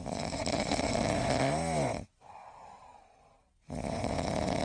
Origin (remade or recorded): recorded